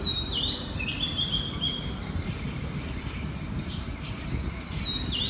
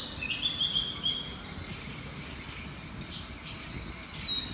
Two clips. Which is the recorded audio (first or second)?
second